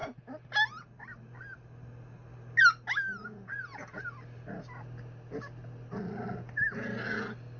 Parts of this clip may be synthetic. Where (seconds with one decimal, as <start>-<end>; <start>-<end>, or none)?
3.2-4.0